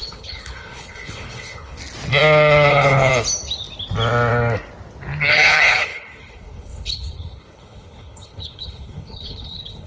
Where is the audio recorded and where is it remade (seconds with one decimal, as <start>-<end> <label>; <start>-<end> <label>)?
0.0-1.8 remade; 1.8-2.7 recorded; 2.7-3.1 remade; 3.1-5.3 recorded; 5.3-9.9 remade